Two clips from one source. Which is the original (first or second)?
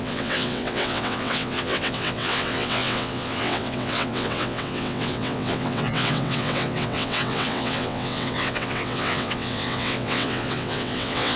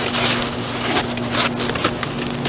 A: second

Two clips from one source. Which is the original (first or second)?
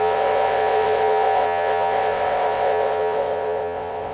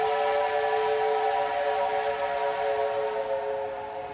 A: second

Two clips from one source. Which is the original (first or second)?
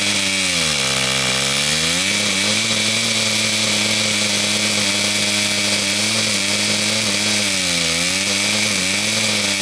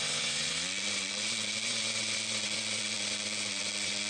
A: first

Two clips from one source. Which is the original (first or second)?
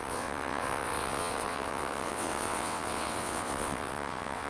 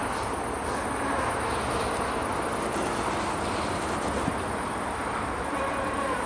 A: second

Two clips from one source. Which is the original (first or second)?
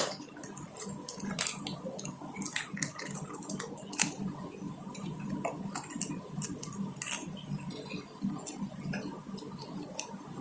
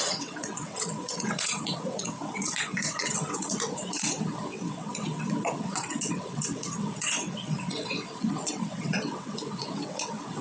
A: first